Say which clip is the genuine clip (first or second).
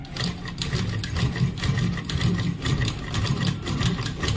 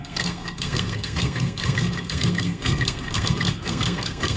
first